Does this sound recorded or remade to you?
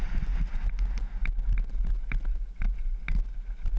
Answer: recorded